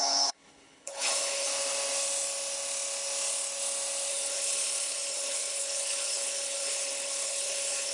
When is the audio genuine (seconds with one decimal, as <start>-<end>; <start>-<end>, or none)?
1.5-4.1